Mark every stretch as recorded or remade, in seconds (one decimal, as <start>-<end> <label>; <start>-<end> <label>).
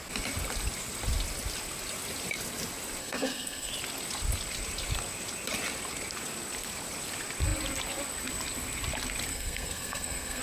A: 0.0-3.0 recorded; 3.0-3.7 remade; 3.7-9.3 recorded; 9.3-10.4 remade